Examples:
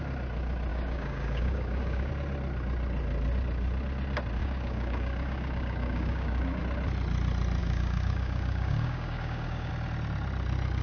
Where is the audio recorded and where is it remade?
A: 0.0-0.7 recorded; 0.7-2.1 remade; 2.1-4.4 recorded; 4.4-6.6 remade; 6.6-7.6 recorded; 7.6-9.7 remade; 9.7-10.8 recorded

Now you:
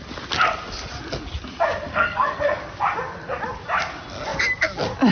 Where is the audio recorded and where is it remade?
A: 0.0-1.9 recorded; 1.9-2.6 remade; 2.6-5.1 recorded

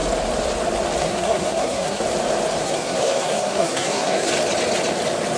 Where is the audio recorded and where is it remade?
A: 0.0-1.0 recorded; 1.0-2.0 remade; 2.0-2.6 recorded; 2.6-4.3 remade; 4.3-5.4 recorded